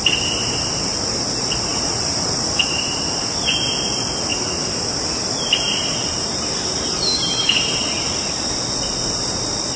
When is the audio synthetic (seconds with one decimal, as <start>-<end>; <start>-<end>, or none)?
1.7-2.6; 4.3-5.0